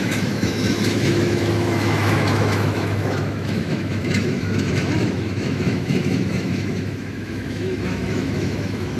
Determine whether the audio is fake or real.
fake